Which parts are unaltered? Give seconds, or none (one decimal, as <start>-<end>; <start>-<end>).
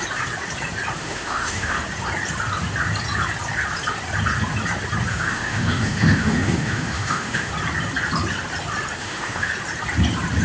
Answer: 0.0-1.0; 1.8-5.1; 7.5-9.0; 9.5-10.4